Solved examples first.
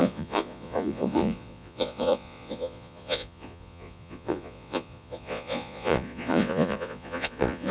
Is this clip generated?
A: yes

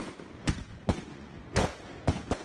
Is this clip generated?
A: yes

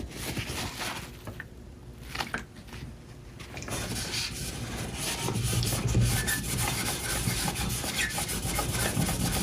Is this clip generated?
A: no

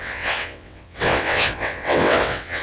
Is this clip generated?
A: yes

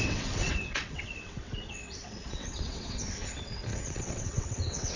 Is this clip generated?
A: yes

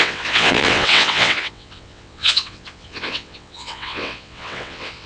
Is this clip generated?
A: yes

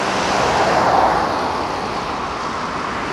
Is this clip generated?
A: no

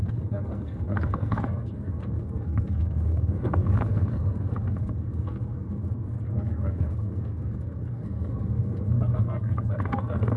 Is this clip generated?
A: yes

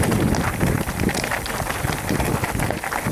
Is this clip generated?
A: no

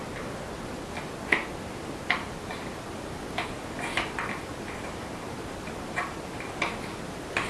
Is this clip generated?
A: no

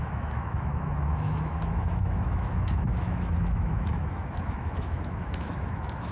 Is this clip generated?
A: yes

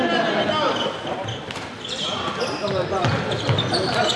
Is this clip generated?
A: no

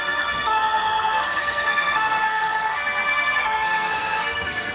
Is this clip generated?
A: yes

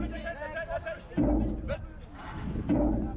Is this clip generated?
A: no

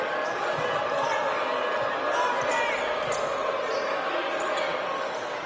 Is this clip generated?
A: no